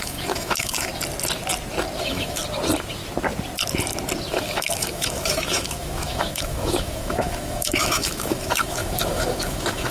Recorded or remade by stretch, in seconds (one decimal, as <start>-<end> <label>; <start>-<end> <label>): 0.0-0.9 remade; 0.9-2.0 recorded; 2.0-2.4 remade; 2.4-4.3 recorded; 4.3-9.9 remade